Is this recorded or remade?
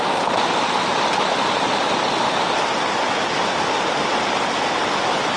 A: recorded